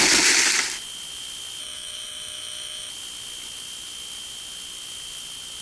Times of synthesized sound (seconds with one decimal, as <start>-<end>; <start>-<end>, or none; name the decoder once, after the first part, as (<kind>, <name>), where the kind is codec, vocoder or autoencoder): 1.6-2.9 (autoencoder, DAC-VAE)

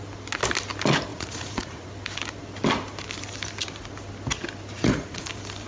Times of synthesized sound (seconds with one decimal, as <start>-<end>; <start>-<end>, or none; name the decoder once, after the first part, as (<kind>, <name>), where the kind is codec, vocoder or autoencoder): 1.1-1.9 (vocoder, Vocos); 4.7-5.3

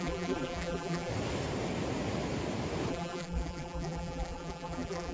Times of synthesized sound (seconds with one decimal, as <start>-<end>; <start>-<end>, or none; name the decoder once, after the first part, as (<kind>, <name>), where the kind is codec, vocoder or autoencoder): 0.0-1.1 (vocoder, BigVGAN v2); 2.9-5.1